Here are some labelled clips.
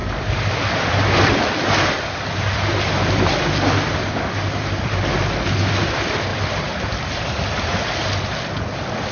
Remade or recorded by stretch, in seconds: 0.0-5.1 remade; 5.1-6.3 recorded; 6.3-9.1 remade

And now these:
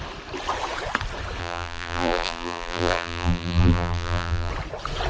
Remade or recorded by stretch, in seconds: 0.0-1.4 recorded; 1.4-4.5 remade; 4.5-5.1 recorded

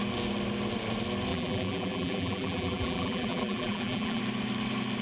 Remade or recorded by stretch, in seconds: 0.0-1.3 recorded; 1.3-4.2 remade; 4.2-5.0 recorded

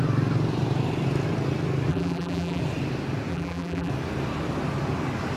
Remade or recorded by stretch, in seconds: 0.0-1.9 recorded; 1.9-2.6 remade; 2.6-3.3 recorded; 3.3-3.9 remade; 3.9-5.4 recorded

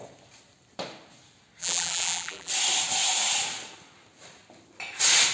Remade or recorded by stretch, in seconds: 0.0-1.6 recorded; 1.6-2.5 remade; 2.5-5.3 recorded

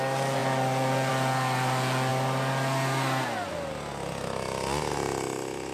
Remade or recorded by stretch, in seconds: 0.0-5.7 recorded

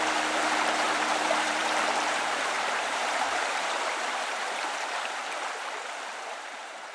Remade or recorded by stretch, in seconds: 0.0-5.2 remade; 5.2-6.3 recorded; 6.3-6.9 remade